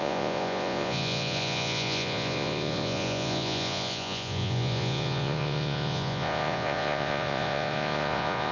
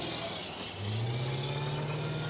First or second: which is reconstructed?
first